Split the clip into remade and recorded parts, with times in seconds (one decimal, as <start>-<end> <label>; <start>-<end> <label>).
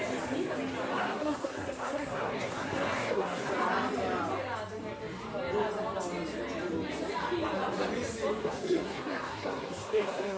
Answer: 0.0-0.9 recorded; 0.9-3.5 remade; 3.5-8.4 recorded; 8.4-10.4 remade